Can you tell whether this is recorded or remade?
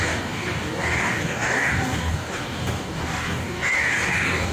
remade